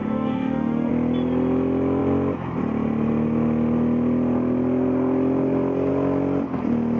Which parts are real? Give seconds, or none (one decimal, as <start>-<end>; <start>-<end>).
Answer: 0.9-7.0